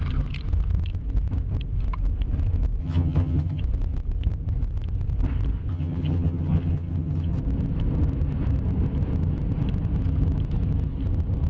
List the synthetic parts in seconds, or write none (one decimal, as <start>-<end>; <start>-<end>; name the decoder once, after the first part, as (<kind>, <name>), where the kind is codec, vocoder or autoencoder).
2.8-3.6 (vocoder, HiFi-GAN); 5.7-7.4